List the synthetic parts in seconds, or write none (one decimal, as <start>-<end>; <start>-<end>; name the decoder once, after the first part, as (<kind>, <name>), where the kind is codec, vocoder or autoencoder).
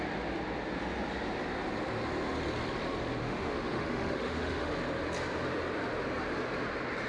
3.2-4.7 (autoencoder, DAC-VAE)